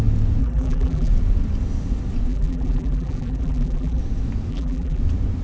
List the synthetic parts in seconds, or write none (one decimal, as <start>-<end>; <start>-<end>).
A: 0.4-1.1; 2.3-4.0; 4.5-5.0